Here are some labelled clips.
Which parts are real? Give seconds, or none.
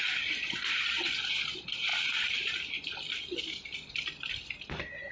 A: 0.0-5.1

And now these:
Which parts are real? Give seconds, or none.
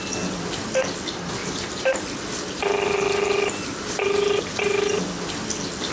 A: 0.0-1.4; 2.0-2.6; 4.9-5.9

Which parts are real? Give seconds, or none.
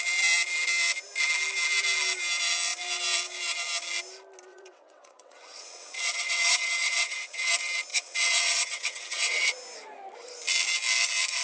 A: 0.0-4.5; 7.5-7.9; 9.5-11.4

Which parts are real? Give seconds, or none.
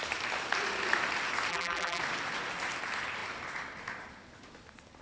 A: 0.0-1.5; 2.0-5.0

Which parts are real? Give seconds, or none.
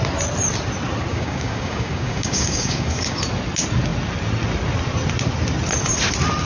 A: 0.0-1.1; 3.2-6.5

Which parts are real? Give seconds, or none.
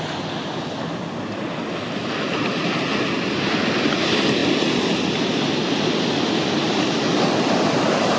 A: 0.0-8.2